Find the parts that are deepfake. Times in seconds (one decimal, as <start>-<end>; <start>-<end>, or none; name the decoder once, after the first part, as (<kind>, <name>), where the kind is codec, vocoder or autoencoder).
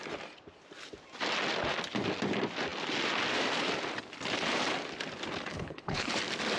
5.5-6.1 (codec, HILCodec)